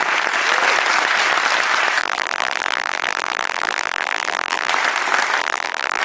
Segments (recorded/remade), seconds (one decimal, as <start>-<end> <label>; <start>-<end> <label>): 0.0-2.0 recorded; 2.0-4.7 remade; 4.7-5.4 recorded; 5.4-6.0 remade